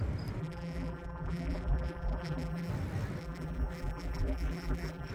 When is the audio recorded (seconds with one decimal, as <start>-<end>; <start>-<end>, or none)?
0.0-0.4; 2.7-3.2